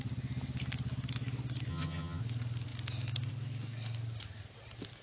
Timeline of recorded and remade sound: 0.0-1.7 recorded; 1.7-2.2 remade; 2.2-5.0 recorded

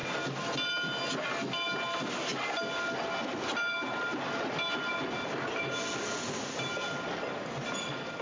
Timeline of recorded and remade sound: 0.0-8.2 recorded

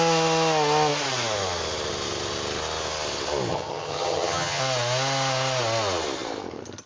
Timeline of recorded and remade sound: 0.0-3.5 recorded; 3.5-4.6 remade; 4.6-6.9 recorded

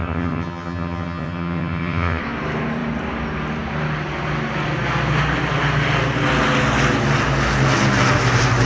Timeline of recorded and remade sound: 0.0-2.2 remade; 2.2-8.7 recorded

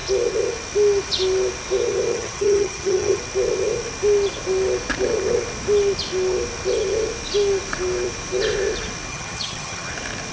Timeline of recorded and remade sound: 0.0-2.1 recorded; 2.1-3.2 remade; 3.2-9.1 recorded; 9.1-9.9 remade; 9.9-10.3 recorded